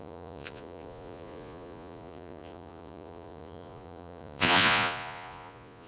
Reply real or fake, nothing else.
fake